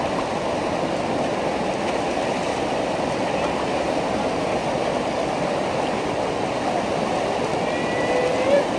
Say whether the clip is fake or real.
fake